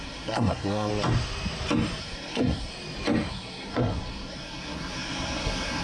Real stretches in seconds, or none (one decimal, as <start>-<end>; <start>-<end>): 0.9-2.0; 2.7-3.3